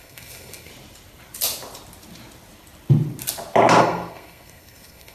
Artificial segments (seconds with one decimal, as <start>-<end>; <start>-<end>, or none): 0.0-0.7; 3.8-5.1